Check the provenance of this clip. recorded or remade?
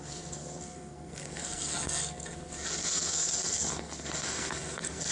remade